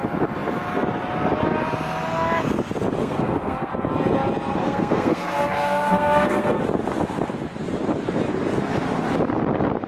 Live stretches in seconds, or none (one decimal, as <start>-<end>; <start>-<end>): 0.0-3.0; 3.7-4.6; 6.6-9.9